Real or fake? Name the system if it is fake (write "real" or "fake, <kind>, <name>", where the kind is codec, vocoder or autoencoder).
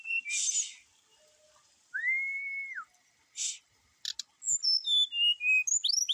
real